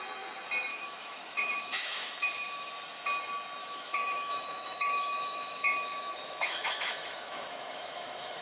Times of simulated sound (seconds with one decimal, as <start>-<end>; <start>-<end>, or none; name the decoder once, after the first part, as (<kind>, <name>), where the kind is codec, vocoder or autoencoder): 0.7-2.7 (autoencoder, DAC-VAE); 3.6-8.4